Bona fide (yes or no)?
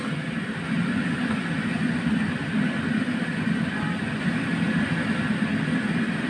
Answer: yes